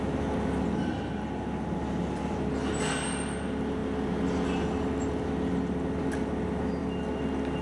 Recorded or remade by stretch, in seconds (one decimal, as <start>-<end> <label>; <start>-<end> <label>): 0.0-7.6 recorded